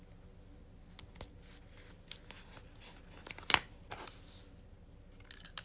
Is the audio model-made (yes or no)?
no